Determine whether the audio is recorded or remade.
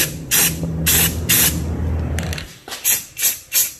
recorded